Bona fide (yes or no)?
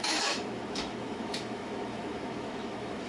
no